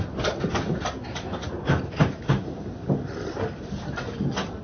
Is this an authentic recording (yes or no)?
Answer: yes